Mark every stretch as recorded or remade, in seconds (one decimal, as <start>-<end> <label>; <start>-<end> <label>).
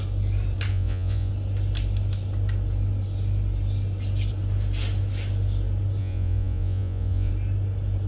0.0-0.7 recorded; 0.7-1.3 remade; 1.3-6.0 recorded; 6.0-7.3 remade; 7.3-8.1 recorded